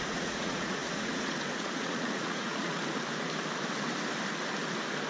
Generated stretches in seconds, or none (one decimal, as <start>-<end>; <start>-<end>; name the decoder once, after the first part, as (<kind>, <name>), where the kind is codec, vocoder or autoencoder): 0.0-2.8 (vocoder, Vocos)